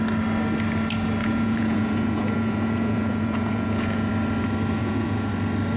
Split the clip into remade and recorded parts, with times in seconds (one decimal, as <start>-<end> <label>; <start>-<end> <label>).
0.0-1.2 recorded; 1.2-4.1 remade; 4.1-4.8 recorded; 4.8-5.3 remade; 5.3-5.8 recorded

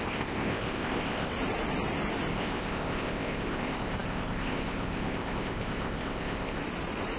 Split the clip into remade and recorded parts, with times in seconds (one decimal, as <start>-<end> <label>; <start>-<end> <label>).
0.0-1.3 remade; 1.3-2.3 recorded; 2.3-6.6 remade; 6.6-7.2 recorded